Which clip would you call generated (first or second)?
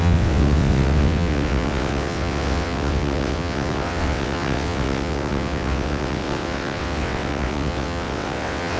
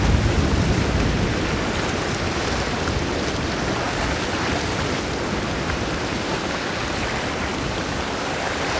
first